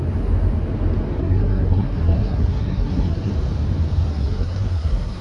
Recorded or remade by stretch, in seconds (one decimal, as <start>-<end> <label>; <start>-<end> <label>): 0.0-1.2 recorded; 1.2-3.3 remade; 3.3-4.1 recorded; 4.1-5.2 remade